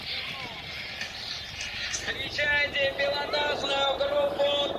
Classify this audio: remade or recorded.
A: recorded